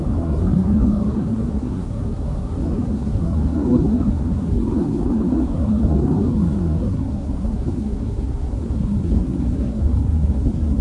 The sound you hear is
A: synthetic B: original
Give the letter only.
A